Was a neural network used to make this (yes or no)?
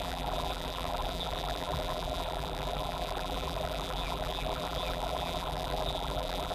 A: yes